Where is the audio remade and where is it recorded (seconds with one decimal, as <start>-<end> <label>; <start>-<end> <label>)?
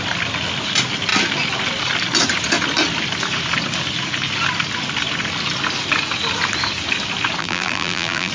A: 0.0-7.4 recorded; 7.4-8.3 remade